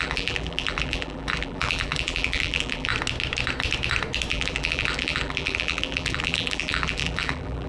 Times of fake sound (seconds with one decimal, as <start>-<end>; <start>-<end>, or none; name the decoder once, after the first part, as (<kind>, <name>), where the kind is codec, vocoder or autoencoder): 0.0-2.9 (vocoder, BigVGAN v2); 4.3-7.7

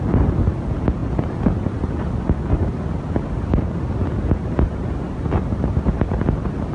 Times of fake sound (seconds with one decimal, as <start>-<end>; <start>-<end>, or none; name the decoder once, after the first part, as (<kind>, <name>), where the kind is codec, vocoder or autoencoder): none

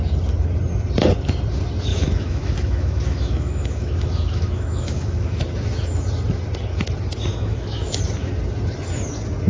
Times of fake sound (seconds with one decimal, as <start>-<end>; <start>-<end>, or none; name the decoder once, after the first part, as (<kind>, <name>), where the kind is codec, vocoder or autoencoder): 1.9-5.4 (autoencoder, DAC-VAE); 7.3-7.9